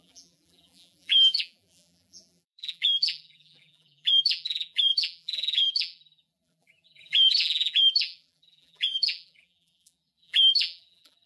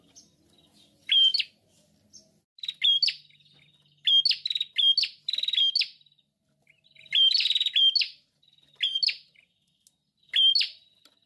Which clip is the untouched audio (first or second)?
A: second